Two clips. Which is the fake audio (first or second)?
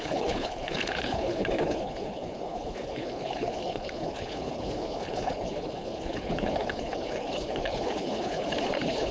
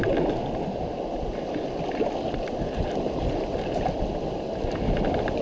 first